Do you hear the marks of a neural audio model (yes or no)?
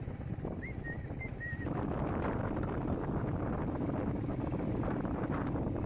no